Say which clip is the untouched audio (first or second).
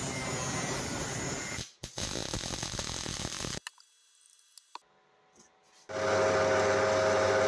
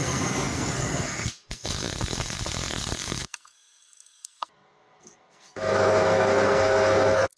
first